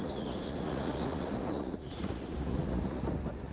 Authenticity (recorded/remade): remade